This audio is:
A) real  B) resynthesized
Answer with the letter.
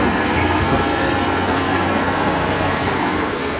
B